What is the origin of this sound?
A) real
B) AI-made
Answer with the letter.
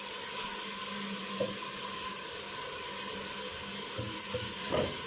A